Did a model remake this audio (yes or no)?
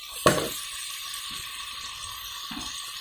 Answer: yes